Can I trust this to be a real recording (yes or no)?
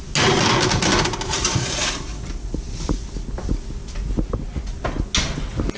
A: yes